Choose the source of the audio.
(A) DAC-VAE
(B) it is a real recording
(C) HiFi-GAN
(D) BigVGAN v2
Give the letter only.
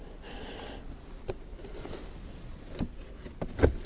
B